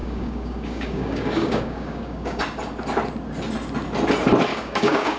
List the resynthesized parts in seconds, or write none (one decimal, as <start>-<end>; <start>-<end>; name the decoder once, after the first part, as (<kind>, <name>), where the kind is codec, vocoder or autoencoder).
0.0-2.4 (codec, DAC); 4.5-5.2